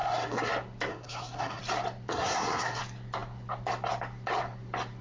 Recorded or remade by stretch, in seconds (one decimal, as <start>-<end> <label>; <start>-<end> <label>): 0.0-0.5 remade; 0.5-0.9 recorded; 0.9-1.6 remade; 1.6-2.1 recorded; 2.1-2.8 remade; 2.8-5.0 recorded